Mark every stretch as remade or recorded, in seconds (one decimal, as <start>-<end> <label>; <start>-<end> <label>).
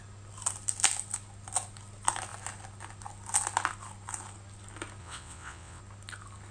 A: 0.0-5.0 recorded; 5.0-5.8 remade; 5.8-6.5 recorded